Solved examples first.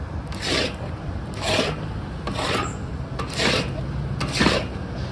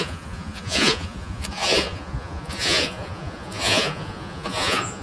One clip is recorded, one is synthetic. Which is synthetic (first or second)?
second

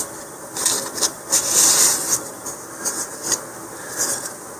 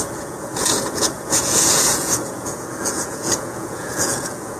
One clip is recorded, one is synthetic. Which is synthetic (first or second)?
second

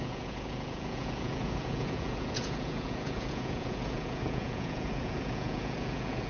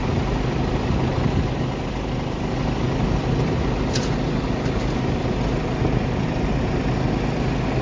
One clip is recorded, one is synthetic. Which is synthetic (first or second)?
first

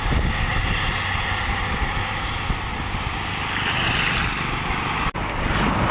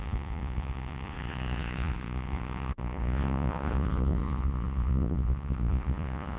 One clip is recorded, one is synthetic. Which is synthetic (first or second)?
second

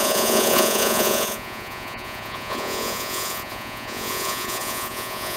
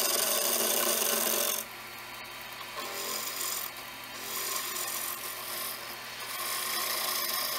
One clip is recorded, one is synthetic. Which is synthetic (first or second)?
first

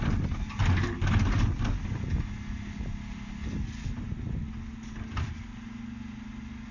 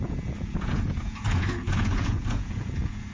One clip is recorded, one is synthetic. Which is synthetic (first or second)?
second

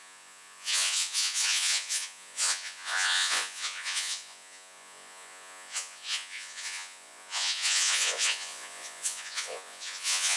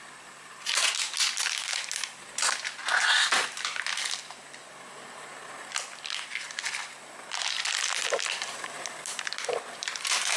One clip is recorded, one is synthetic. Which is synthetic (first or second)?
first